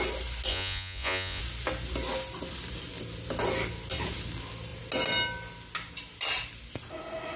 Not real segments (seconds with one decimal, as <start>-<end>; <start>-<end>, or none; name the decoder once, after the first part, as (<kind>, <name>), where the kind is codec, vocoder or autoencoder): 0.5-1.4 (vocoder, Vocos)